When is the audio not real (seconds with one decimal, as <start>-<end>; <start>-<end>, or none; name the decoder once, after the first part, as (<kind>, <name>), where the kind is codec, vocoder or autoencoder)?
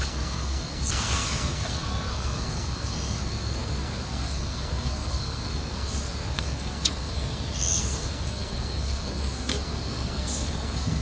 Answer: 0.0-11.0 (codec, SNAC)